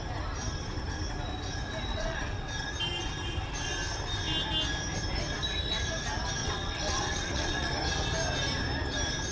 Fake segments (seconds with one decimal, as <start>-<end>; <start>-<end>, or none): 1.9-2.5; 6.4-7.7

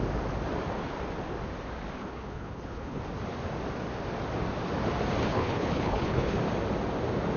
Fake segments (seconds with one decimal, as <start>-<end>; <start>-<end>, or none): 2.0-3.0; 5.3-6.4

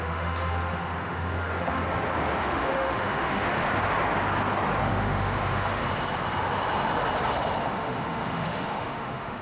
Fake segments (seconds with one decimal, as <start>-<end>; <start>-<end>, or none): 0.0-1.8; 2.4-3.6; 4.8-5.8; 7.6-9.4

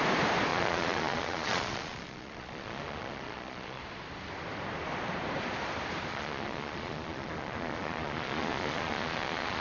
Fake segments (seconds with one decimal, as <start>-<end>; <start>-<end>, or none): 0.5-3.8; 6.1-9.6

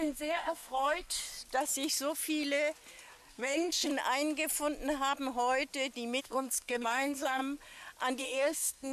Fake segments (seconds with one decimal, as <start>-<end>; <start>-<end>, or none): 0.0-1.2; 3.3-3.9; 6.2-7.4; 8.2-8.9